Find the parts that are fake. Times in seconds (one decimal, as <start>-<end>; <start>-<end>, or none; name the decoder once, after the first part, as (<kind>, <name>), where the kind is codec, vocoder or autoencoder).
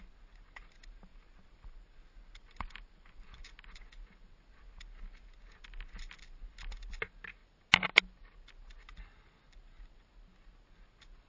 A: 1.1-3.1 (vocoder, BigVGAN v2)